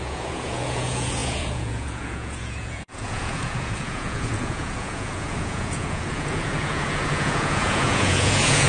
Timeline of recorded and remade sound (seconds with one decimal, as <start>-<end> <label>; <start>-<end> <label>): 0.0-8.7 remade